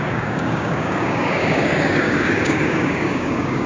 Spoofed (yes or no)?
yes